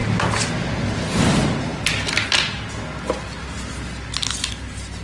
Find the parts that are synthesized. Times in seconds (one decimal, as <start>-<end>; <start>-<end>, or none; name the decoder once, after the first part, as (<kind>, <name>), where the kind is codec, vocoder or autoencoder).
none